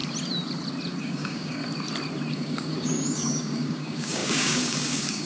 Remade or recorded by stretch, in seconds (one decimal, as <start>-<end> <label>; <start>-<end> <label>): 0.0-1.0 recorded; 1.0-1.6 remade; 1.6-2.3 recorded; 2.3-5.3 remade